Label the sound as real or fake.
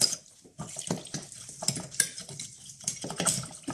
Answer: real